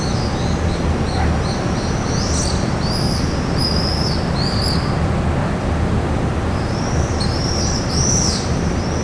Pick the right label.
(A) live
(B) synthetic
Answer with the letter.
B